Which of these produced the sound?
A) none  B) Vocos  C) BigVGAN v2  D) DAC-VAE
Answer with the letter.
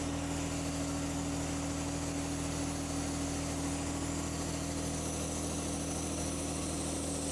A